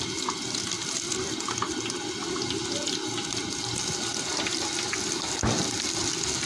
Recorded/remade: recorded